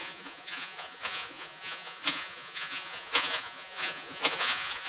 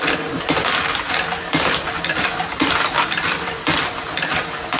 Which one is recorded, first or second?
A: second